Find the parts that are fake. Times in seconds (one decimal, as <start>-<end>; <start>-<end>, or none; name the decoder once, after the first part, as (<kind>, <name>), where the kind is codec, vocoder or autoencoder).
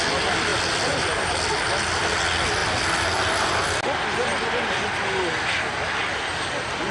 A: none